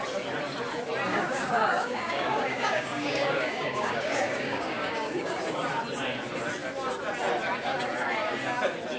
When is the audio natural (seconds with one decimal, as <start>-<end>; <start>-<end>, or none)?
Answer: 0.0-1.1; 5.4-9.0